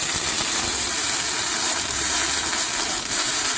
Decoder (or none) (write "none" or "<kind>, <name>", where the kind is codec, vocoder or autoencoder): vocoder, BigVGAN v2